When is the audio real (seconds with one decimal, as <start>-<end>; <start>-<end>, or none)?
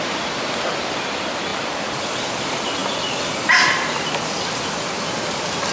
0.0-5.7